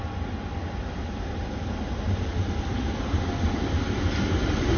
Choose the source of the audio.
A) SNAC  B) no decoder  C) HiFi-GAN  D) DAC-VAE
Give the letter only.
B